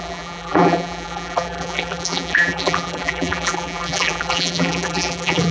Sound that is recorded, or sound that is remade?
remade